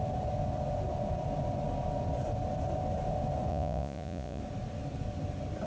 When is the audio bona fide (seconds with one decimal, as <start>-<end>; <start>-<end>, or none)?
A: 0.0-3.5; 4.4-5.7